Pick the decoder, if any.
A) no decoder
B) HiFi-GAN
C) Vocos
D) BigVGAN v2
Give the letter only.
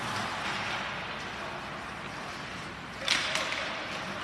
A